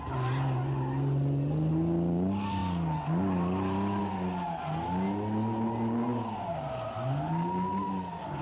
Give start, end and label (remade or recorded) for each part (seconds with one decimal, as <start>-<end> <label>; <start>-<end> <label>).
0.0-8.4 recorded